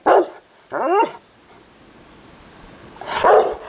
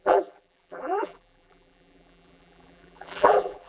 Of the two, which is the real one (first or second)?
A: first